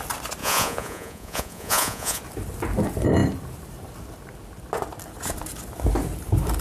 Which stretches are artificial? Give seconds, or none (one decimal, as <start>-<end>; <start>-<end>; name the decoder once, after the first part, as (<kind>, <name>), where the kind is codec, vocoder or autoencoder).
0.4-2.2 (vocoder, Vocos)